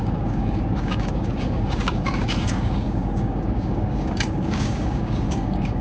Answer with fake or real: fake